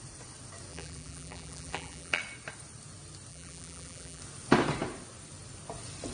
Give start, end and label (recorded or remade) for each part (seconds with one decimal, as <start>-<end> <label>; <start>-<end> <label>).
0.0-0.7 recorded; 0.7-2.2 remade; 2.2-3.3 recorded; 3.3-4.2 remade; 4.2-6.1 recorded

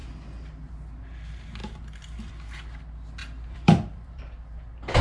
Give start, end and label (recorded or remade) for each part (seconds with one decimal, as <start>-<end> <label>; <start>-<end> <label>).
0.0-1.6 recorded; 1.6-2.3 remade; 2.3-3.2 recorded; 3.2-4.2 remade; 4.2-5.0 recorded

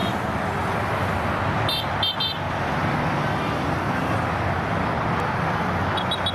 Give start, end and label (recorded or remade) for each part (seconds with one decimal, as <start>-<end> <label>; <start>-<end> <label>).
0.0-6.3 recorded